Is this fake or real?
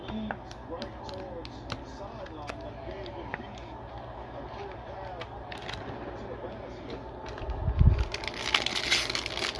real